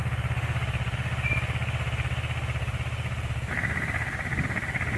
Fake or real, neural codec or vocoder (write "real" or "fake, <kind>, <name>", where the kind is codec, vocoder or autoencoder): fake, vocoder, BigVGAN v2